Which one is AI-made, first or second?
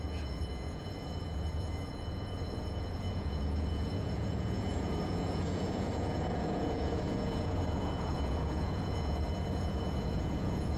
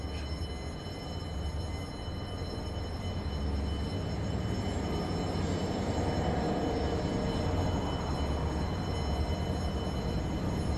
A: first